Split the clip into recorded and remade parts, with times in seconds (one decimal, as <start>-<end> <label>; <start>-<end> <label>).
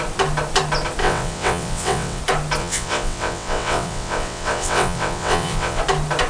0.0-1.0 recorded; 1.0-2.2 remade; 2.2-2.6 recorded; 2.6-5.8 remade; 5.8-6.3 recorded